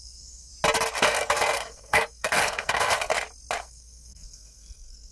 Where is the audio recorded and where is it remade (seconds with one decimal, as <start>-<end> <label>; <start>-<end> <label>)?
0.0-0.5 remade; 0.5-1.0 recorded; 1.0-3.1 remade; 3.1-3.6 recorded; 3.6-5.1 remade